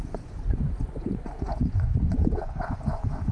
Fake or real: fake